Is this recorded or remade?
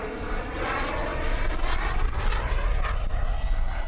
recorded